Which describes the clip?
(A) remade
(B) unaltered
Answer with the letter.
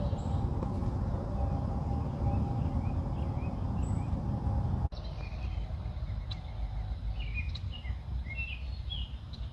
B